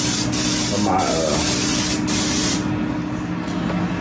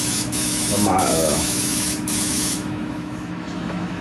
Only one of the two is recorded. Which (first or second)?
first